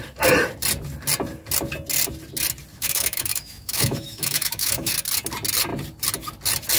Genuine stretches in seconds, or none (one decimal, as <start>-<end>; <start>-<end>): 0.0-2.7; 4.9-6.8